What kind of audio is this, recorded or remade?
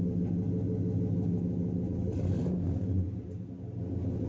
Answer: recorded